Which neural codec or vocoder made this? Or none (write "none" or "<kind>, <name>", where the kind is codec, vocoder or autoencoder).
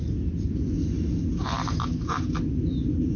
none